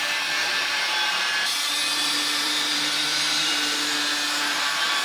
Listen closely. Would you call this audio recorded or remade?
remade